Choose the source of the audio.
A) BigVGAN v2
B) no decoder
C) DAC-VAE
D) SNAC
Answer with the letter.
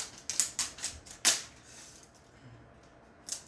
B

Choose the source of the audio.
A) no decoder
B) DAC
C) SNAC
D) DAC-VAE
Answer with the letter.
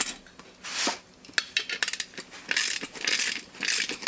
A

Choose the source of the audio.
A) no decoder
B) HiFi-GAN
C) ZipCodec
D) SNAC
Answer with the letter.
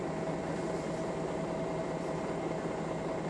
A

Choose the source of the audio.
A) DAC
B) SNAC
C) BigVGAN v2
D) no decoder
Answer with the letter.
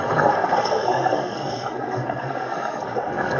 B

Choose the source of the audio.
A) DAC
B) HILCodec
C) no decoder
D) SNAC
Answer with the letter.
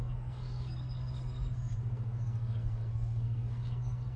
D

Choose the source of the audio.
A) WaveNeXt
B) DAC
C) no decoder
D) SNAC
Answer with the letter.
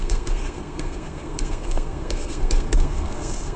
D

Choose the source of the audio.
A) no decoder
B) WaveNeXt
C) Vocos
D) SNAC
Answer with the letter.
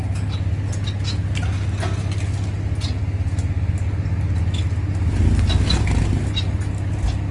A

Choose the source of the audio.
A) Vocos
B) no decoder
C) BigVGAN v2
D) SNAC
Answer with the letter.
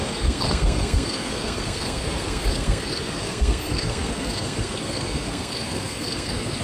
D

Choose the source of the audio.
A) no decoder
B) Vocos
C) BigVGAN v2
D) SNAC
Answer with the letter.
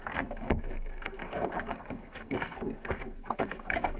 D